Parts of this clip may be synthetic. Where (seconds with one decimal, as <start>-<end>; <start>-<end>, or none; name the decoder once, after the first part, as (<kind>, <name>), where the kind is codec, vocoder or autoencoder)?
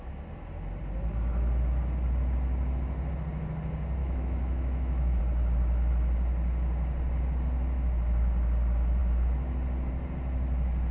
4.0-5.2 (autoencoder, DAC-VAE)